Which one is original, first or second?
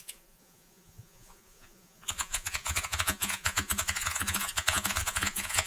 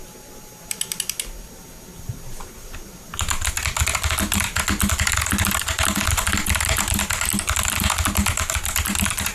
second